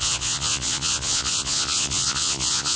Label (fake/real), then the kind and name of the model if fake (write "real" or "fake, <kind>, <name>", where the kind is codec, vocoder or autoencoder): fake, vocoder, Vocos